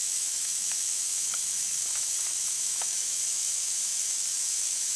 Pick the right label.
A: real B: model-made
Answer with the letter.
B